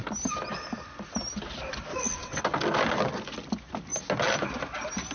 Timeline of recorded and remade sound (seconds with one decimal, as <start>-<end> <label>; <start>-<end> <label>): 0.0-1.9 recorded; 1.9-2.4 remade; 2.4-5.1 recorded